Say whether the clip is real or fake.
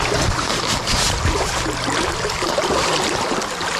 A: real